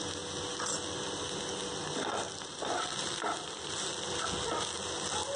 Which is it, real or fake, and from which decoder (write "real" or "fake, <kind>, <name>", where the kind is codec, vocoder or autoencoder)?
real